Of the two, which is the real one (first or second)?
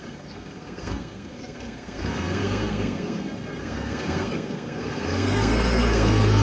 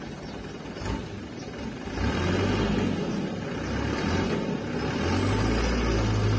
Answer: second